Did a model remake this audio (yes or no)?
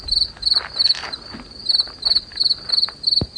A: no